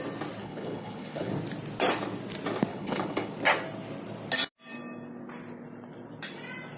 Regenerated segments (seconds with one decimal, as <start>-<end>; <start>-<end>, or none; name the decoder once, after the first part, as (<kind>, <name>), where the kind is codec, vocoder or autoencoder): 0.4-1.3 (codec, HILCodec); 2.7-3.3